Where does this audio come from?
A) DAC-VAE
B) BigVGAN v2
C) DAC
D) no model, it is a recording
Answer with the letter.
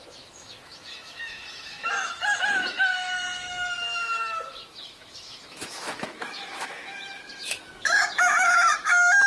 A